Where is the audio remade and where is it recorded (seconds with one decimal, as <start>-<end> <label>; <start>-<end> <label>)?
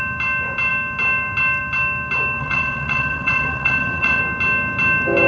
0.0-2.4 recorded; 2.4-4.2 remade; 4.2-5.3 recorded